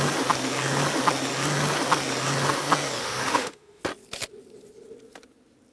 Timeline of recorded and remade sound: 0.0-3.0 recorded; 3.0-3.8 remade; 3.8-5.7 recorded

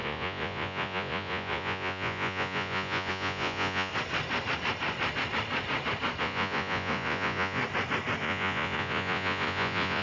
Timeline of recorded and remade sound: 0.0-3.9 remade; 3.9-6.2 recorded; 6.2-7.6 remade; 7.6-8.2 recorded; 8.2-10.0 remade

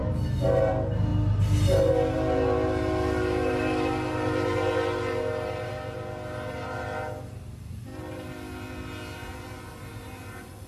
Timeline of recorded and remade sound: 0.0-10.7 recorded